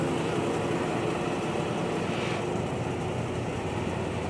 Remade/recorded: recorded